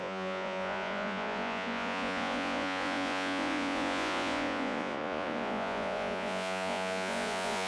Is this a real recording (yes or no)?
no